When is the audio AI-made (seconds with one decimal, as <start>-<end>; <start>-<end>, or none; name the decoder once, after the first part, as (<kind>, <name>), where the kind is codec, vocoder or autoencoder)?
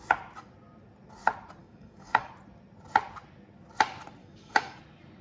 1.6-2.3 (codec, DAC); 4.2-4.8